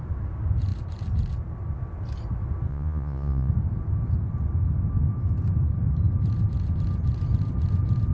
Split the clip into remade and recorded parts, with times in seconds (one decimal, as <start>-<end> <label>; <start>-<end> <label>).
0.0-2.7 recorded; 2.7-3.5 remade; 3.5-8.1 recorded